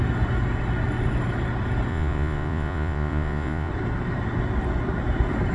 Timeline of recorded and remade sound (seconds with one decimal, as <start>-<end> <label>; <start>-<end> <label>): 0.0-1.9 recorded; 1.9-3.7 remade; 3.7-5.5 recorded